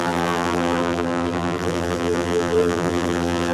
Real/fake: fake